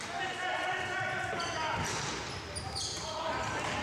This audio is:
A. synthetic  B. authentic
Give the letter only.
B